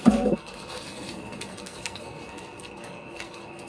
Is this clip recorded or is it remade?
remade